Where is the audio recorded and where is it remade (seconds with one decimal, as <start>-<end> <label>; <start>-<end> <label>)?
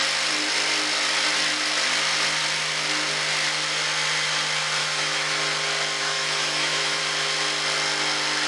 0.0-4.8 recorded; 4.8-5.4 remade; 5.4-6.0 recorded; 6.0-7.0 remade; 7.0-8.5 recorded